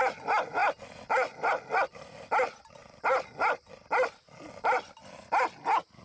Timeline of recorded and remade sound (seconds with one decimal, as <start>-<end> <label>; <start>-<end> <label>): 0.0-6.0 recorded